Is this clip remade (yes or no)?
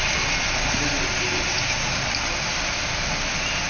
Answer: no